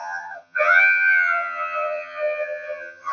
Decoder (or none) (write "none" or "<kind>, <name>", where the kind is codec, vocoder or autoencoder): vocoder, HiFi-GAN